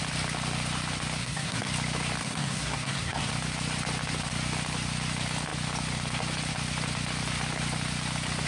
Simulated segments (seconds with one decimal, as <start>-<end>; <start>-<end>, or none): 1.2-1.7; 2.2-3.3

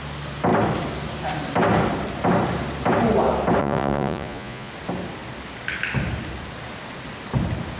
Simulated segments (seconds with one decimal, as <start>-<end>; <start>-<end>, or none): 3.6-4.7

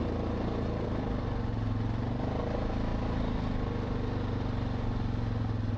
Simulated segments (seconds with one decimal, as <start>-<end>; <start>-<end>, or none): none

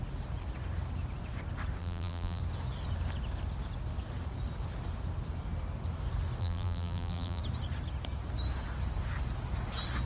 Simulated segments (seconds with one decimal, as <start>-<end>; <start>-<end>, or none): 1.8-2.4; 6.4-7.4